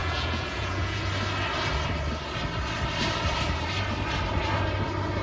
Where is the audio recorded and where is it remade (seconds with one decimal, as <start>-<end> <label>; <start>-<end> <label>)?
0.0-1.1 remade; 1.1-5.2 recorded